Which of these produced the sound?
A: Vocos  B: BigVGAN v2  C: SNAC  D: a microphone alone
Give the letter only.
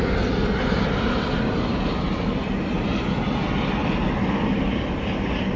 B